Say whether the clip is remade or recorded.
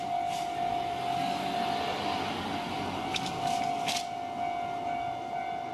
recorded